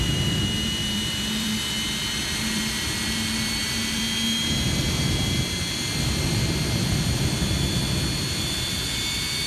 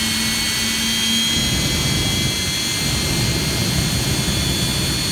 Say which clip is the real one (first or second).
second